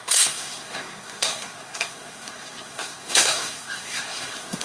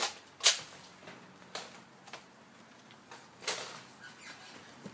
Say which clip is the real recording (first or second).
second